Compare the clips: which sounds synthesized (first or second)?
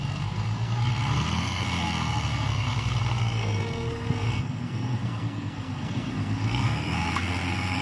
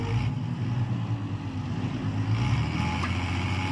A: first